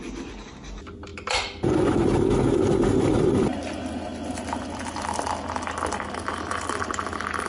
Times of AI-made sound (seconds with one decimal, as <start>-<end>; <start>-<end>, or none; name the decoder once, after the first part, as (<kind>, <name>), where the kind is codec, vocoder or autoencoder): none